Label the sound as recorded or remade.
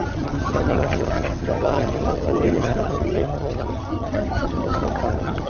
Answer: remade